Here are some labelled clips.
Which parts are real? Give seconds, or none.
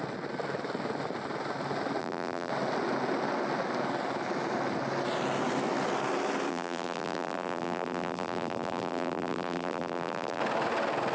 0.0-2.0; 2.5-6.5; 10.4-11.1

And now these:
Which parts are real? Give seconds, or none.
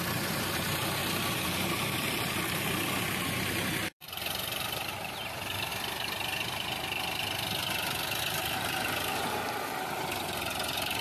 5.7-8.2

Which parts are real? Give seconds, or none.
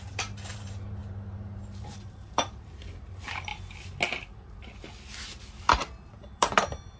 3.5-6.1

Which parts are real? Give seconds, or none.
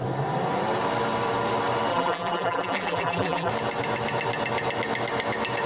0.0-1.9; 3.5-5.7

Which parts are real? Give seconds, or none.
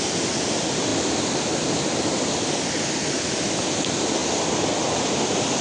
0.0-0.9; 1.7-5.6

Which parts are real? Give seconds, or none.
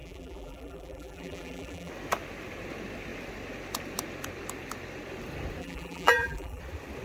1.9-5.6; 6.6-7.0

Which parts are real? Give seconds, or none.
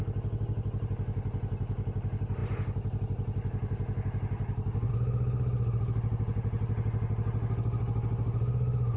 0.0-9.0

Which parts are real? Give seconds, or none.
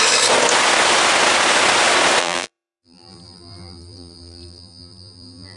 0.0-2.2